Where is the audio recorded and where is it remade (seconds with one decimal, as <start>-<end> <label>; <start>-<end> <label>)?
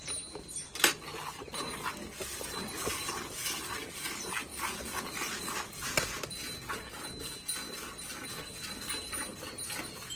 0.0-10.2 recorded